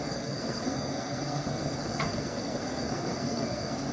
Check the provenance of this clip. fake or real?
fake